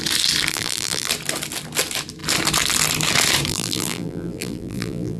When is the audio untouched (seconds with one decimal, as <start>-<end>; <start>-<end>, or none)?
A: 0.0-0.5; 1.1-3.5